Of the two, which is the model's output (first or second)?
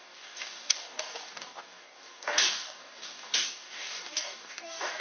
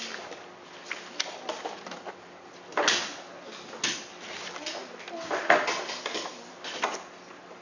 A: first